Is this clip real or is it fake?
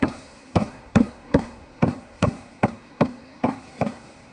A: fake